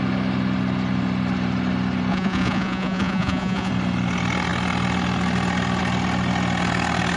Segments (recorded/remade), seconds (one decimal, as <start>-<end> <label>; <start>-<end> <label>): 0.0-2.1 recorded; 2.1-3.7 remade; 3.7-7.2 recorded